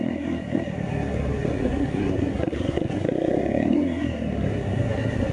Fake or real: fake